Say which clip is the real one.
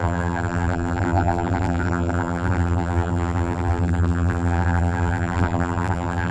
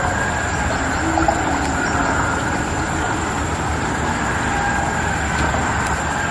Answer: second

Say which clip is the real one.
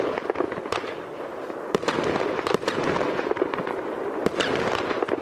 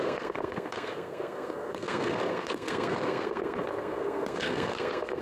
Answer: first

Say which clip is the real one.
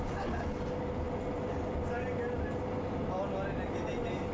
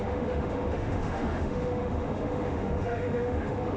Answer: first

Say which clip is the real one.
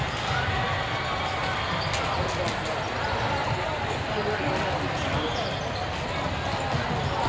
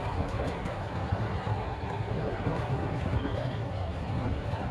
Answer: first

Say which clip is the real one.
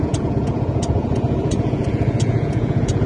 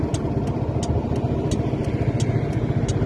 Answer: second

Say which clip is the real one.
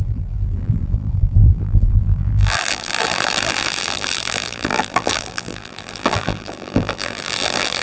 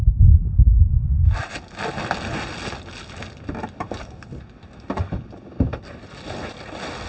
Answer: second